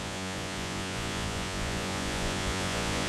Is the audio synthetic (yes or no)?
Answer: yes